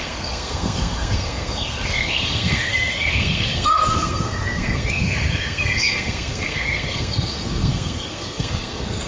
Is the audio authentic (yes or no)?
no